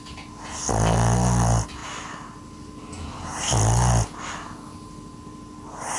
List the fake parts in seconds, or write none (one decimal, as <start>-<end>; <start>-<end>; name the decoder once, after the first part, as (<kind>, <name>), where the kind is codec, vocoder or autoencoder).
none